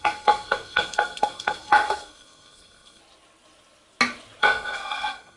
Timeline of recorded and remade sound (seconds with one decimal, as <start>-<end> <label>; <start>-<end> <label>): 0.0-3.0 remade; 3.0-4.4 recorded; 4.4-5.4 remade